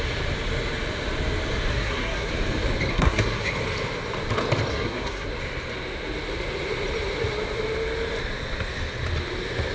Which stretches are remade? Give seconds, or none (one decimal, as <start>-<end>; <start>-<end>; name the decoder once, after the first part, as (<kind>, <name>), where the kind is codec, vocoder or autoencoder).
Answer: 1.7-2.3 (codec, SNAC); 2.9-3.5; 4.7-5.3